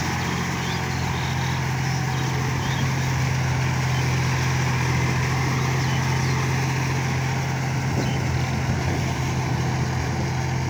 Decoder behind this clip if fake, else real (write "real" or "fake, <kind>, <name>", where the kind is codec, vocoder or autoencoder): real